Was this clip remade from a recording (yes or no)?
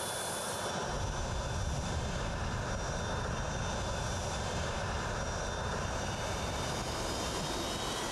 no